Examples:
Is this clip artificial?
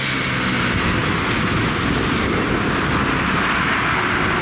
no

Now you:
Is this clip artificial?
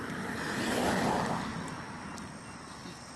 no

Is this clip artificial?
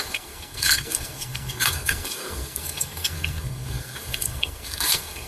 yes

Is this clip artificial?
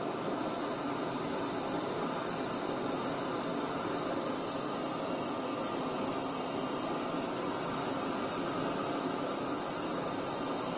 no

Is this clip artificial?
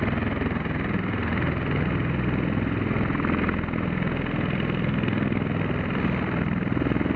no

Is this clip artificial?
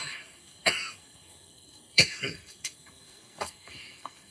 yes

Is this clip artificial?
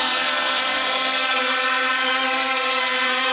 yes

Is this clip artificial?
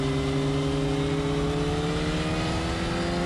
no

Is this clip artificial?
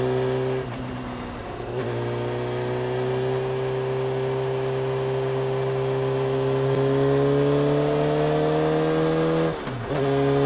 no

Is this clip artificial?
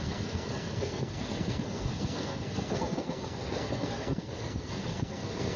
yes